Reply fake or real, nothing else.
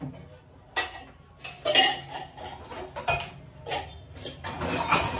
real